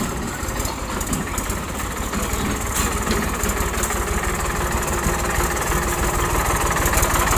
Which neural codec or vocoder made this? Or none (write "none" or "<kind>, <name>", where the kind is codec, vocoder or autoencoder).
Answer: none